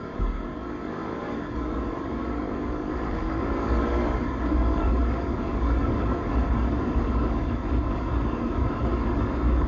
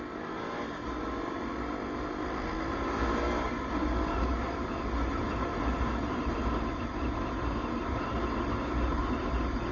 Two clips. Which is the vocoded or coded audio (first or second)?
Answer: first